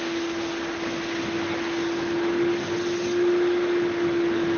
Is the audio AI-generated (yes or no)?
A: no